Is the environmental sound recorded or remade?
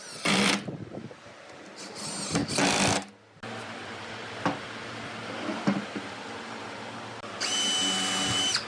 recorded